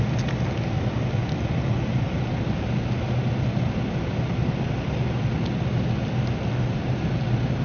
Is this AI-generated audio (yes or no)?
no